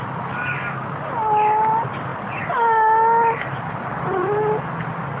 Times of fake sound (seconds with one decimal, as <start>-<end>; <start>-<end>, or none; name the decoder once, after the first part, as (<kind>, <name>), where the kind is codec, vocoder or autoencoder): none